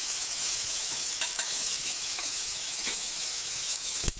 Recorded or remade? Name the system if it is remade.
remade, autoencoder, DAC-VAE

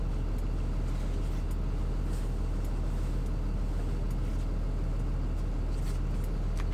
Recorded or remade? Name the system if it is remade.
recorded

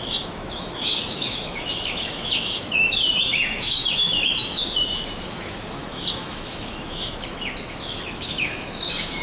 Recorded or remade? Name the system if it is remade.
remade, autoencoder, DAC-VAE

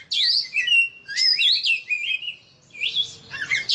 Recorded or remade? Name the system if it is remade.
recorded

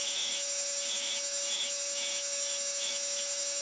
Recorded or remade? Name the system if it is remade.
remade, autoencoder, DAC-VAE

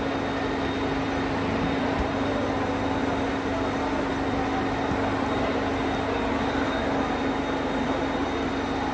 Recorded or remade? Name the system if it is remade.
recorded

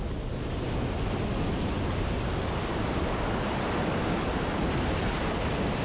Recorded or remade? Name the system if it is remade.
recorded